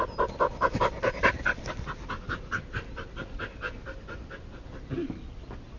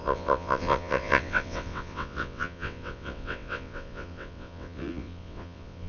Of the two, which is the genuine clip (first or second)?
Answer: first